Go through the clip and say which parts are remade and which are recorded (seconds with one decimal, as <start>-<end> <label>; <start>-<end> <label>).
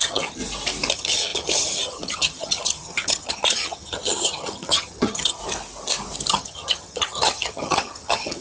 0.0-0.4 remade; 0.4-0.9 recorded; 0.9-5.4 remade; 5.4-6.3 recorded; 6.3-8.4 remade